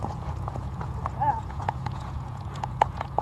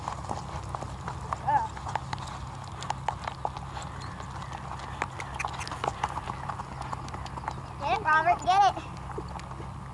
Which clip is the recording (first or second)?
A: second